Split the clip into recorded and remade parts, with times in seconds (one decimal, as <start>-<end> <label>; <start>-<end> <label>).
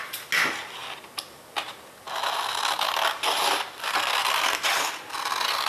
0.0-5.7 recorded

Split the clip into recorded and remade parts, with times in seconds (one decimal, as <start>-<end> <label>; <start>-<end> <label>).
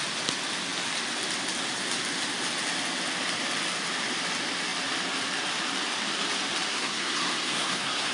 0.0-6.7 recorded; 6.7-8.1 remade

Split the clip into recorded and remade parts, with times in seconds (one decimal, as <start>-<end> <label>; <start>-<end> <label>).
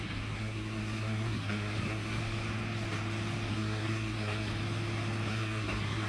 0.0-2.2 remade; 2.2-3.5 recorded; 3.5-4.5 remade; 4.5-5.3 recorded; 5.3-6.1 remade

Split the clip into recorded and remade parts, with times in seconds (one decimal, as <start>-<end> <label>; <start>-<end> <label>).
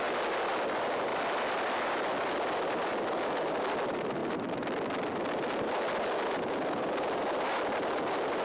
0.0-8.4 recorded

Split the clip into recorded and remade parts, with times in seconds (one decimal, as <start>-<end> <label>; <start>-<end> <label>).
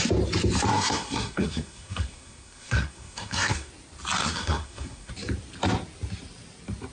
0.0-0.7 recorded; 0.7-3.7 remade; 3.7-4.2 recorded; 4.2-5.1 remade; 5.1-6.9 recorded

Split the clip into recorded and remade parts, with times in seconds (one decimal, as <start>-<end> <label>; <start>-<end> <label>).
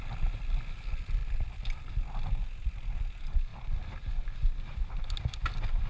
0.0-5.9 recorded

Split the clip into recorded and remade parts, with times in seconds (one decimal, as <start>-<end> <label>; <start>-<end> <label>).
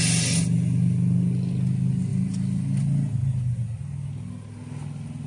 0.0-5.3 recorded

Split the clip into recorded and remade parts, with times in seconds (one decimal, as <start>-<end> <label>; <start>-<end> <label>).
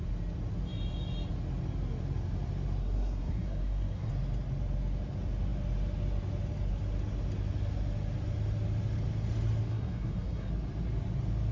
0.0-2.8 recorded; 2.8-4.1 remade; 4.1-9.7 recorded; 9.7-10.5 remade; 10.5-11.5 recorded